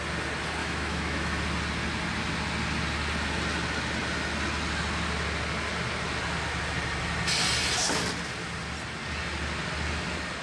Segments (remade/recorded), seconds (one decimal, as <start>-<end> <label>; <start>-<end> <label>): 0.0-0.6 recorded; 0.6-1.4 remade; 1.4-10.4 recorded